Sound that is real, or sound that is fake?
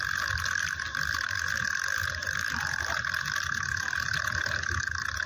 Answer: real